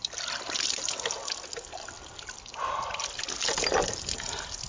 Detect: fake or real real